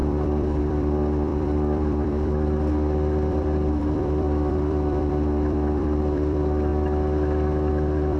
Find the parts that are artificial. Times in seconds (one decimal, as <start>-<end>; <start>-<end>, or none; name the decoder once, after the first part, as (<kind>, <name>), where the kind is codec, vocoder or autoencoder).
0.0-6.7 (vocoder, BigVGAN v2); 7.7-8.2